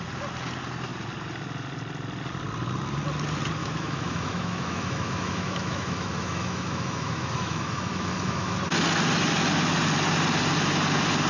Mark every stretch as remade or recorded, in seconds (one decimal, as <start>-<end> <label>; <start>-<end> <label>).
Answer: 0.0-3.6 recorded; 3.6-8.6 remade; 8.6-11.3 recorded